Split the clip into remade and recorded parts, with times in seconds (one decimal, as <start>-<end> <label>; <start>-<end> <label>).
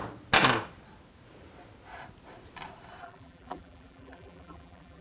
0.0-3.0 recorded; 3.0-5.0 remade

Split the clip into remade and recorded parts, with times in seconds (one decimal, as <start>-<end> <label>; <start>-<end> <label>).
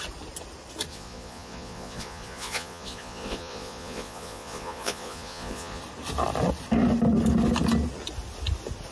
0.0-0.9 recorded; 0.9-5.8 remade; 5.8-8.9 recorded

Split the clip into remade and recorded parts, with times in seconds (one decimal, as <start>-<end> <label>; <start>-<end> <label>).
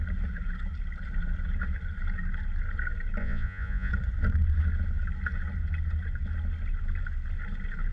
0.0-3.2 recorded; 3.2-3.9 remade; 3.9-7.9 recorded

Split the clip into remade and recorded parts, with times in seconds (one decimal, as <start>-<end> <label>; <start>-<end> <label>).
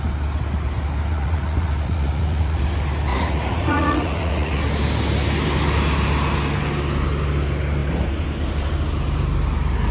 0.0-1.1 recorded; 1.1-2.6 remade; 2.6-3.1 recorded; 3.1-4.6 remade; 4.6-9.9 recorded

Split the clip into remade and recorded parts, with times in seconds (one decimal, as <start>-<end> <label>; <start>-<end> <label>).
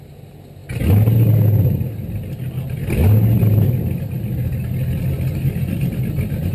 0.0-6.5 recorded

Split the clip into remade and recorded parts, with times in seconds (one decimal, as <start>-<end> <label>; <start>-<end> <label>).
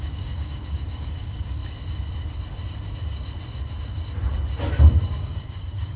0.0-1.6 remade; 1.6-5.2 recorded; 5.2-6.0 remade